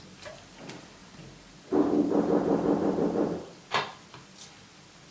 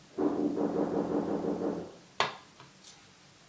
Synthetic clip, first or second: first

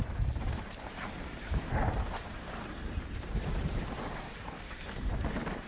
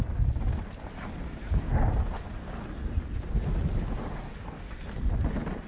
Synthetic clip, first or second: first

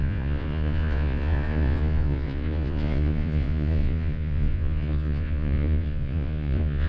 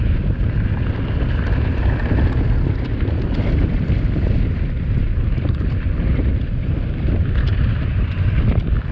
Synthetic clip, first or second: first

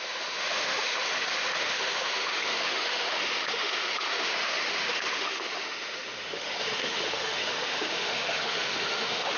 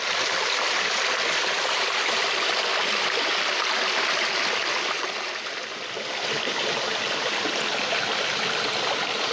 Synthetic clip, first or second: first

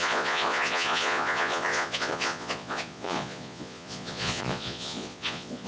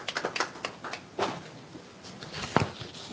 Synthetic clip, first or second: first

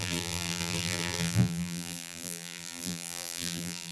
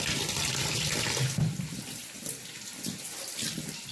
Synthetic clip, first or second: first